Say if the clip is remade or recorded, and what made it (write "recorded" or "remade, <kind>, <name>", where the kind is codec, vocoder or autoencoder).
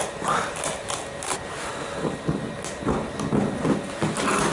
recorded